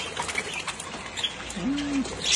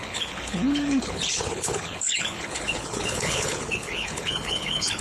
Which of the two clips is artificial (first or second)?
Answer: second